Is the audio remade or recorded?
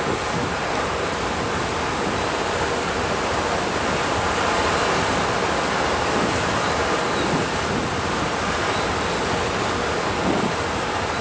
recorded